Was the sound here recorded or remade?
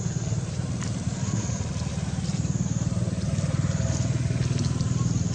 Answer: recorded